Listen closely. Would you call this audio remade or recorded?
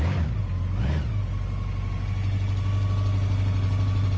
recorded